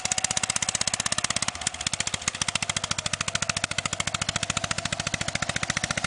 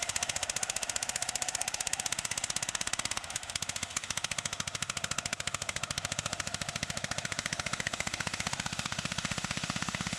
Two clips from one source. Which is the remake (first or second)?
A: second